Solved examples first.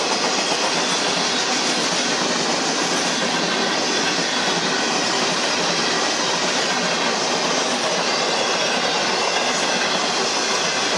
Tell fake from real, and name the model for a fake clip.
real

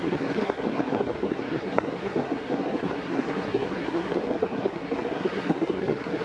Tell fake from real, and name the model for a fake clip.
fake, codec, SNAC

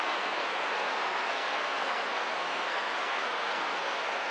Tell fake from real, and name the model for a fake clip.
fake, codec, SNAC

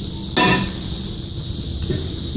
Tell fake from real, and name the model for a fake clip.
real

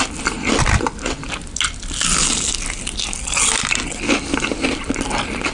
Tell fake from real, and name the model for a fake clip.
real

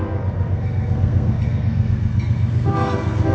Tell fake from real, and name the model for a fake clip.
fake, codec, SNAC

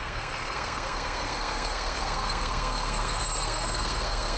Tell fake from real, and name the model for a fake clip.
fake, codec, SNAC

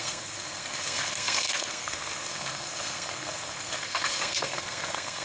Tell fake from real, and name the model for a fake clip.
fake, codec, SNAC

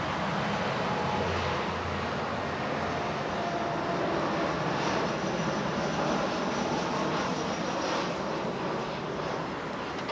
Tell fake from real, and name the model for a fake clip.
real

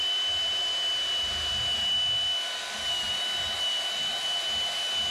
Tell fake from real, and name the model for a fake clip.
real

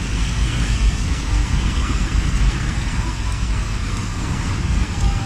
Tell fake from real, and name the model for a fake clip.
fake, codec, SNAC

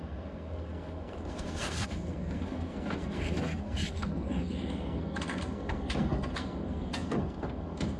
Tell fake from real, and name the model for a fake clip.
fake, codec, SNAC